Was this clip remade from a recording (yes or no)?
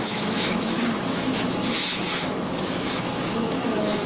yes